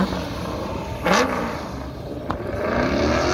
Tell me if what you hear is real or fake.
real